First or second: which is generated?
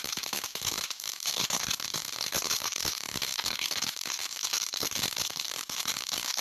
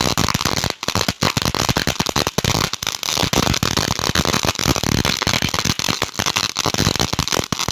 first